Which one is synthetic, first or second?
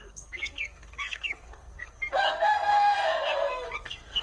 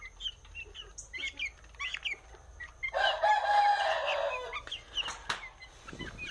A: first